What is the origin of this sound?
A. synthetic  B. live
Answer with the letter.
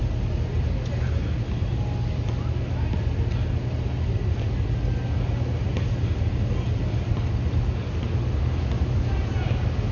B